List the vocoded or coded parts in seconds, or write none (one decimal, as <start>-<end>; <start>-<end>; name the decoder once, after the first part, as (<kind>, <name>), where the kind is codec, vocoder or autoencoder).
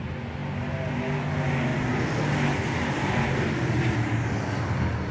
none